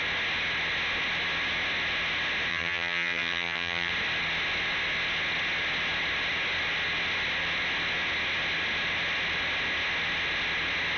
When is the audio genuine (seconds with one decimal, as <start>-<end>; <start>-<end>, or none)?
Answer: 0.0-2.5; 3.9-11.0